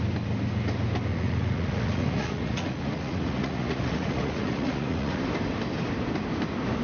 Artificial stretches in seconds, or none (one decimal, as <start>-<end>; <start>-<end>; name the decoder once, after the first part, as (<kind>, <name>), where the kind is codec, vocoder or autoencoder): 1.1-5.2 (vocoder, Vocos)